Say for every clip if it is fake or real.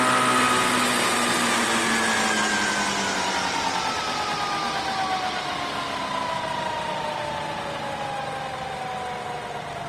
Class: real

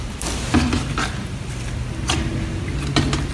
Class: real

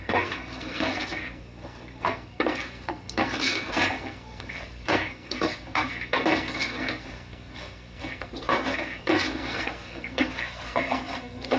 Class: fake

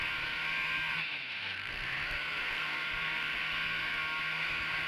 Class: fake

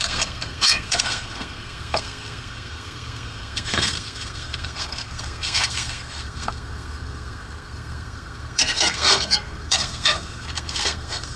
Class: fake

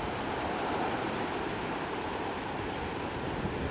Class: real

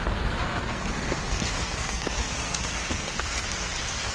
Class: fake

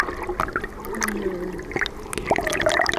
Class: real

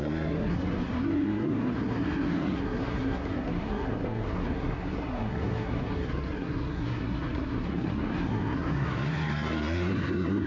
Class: fake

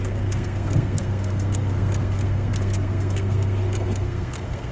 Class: fake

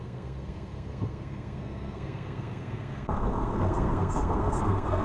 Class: fake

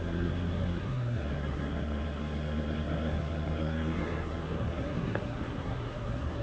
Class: fake